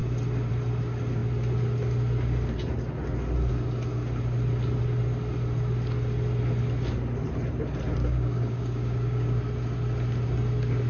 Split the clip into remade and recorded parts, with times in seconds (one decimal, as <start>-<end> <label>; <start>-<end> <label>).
0.0-8.0 recorded; 8.0-9.4 remade; 9.4-10.9 recorded